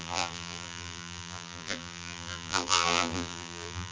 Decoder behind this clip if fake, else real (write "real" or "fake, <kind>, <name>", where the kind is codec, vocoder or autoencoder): fake, vocoder, BigVGAN v2